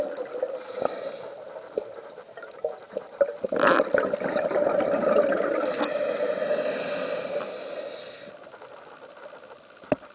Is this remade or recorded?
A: recorded